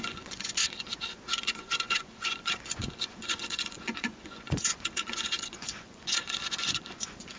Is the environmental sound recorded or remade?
remade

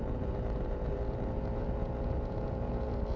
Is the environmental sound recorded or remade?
remade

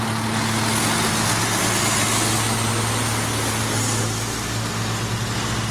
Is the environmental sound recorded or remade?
recorded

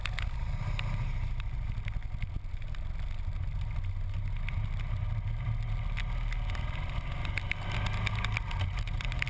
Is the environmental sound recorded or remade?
recorded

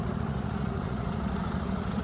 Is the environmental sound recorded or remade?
remade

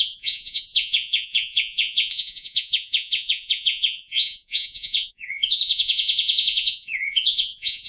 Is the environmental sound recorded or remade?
remade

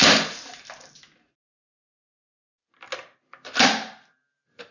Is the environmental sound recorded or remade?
recorded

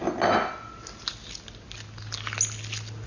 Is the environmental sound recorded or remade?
recorded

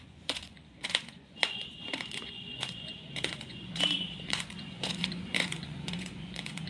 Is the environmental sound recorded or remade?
remade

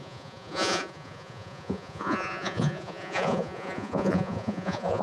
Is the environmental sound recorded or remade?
remade